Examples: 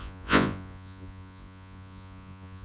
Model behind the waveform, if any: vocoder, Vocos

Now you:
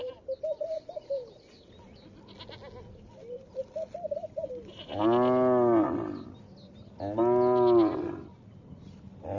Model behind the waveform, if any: none